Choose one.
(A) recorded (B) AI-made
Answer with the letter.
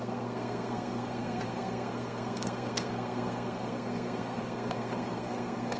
B